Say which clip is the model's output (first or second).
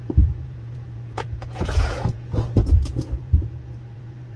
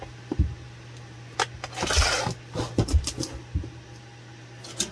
first